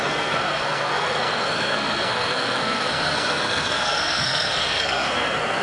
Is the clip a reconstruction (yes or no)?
yes